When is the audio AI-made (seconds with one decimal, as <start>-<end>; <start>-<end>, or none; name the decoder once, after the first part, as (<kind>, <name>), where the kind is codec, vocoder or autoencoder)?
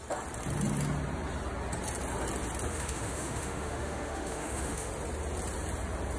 2.7-4.9 (autoencoder, DAC-VAE)